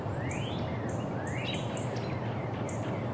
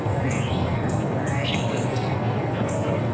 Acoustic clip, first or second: first